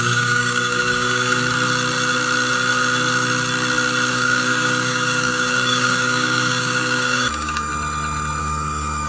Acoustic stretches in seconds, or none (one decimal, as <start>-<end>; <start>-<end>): 1.4-4.1; 7.7-8.4